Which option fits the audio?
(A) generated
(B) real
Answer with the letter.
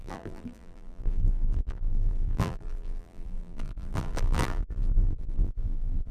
A